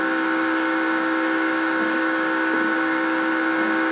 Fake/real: fake